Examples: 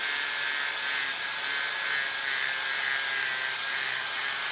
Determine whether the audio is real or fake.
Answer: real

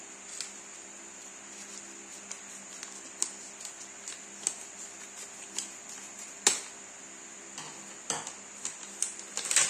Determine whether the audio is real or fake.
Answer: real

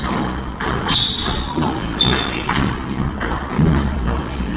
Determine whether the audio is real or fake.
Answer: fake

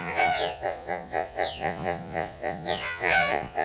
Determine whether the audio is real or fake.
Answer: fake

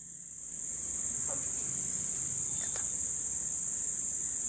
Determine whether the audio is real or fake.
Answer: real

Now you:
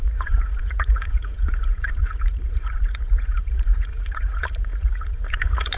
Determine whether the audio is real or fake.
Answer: fake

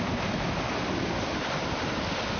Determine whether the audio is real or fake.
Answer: real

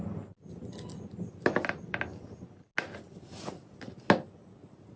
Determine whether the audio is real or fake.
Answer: real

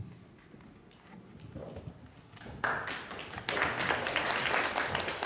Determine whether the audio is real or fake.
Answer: real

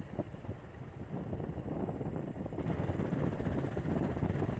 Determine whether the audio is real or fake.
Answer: real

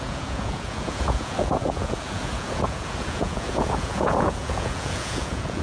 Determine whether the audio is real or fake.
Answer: fake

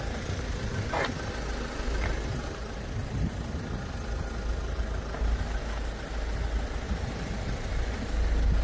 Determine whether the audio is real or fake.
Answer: real